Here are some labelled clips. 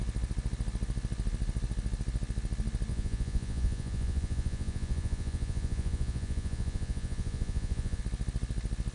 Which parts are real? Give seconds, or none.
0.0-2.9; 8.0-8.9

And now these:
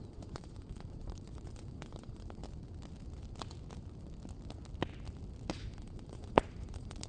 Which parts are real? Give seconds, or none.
2.4-5.5

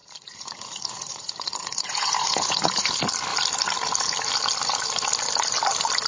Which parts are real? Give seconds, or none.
2.9-6.1

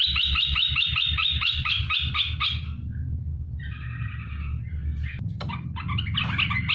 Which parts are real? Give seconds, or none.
0.0-6.7

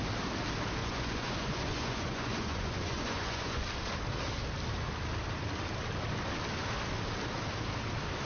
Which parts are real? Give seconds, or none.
0.0-0.8; 3.6-8.2

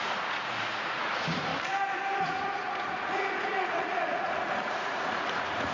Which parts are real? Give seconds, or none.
1.5-2.2